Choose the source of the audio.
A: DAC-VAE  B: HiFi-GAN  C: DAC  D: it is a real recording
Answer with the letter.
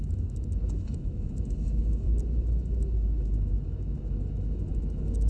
A